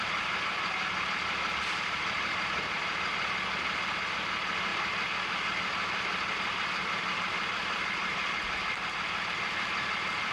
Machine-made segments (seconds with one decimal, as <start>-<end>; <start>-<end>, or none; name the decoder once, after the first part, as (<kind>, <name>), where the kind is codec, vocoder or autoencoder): none